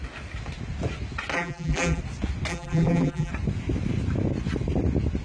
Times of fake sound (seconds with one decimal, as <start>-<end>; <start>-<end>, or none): 1.3-2.0; 2.5-3.3

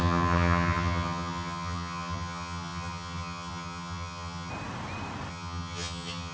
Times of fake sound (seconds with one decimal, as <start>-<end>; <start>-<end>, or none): 0.0-4.5; 5.3-6.3